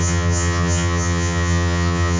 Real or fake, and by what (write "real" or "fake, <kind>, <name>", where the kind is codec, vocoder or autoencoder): fake, vocoder, HiFi-GAN